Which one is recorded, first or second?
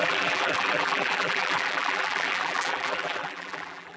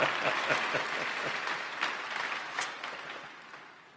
second